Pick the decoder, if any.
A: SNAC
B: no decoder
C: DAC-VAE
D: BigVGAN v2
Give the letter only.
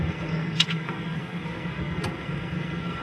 A